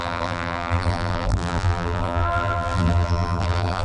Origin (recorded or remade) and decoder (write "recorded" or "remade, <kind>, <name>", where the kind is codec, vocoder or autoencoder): remade, vocoder, BigVGAN v2